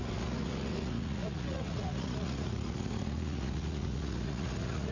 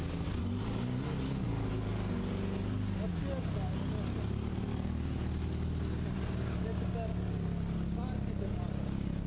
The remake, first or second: first